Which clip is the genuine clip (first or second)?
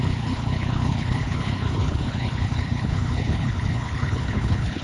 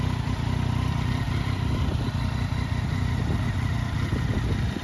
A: second